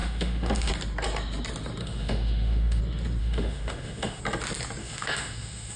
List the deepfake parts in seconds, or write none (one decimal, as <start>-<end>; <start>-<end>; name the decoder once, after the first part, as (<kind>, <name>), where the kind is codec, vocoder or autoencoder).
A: 0.0-0.7 (autoencoder, DAC-VAE); 1.8-2.8; 3.2-4.2; 4.8-5.8